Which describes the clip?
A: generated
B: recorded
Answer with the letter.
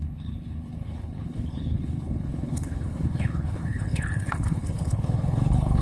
A